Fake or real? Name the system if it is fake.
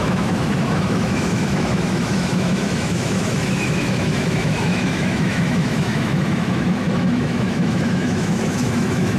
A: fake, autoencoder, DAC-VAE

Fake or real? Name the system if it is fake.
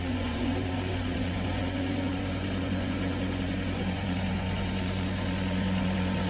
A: fake, vocoder, Vocos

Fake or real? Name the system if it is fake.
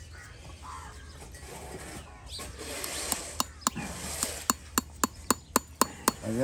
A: real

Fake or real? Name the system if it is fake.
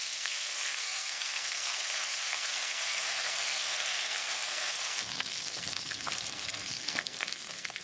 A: fake, codec, SNAC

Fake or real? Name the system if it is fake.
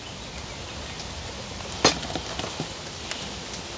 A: real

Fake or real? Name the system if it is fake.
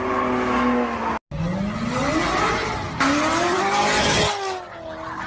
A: real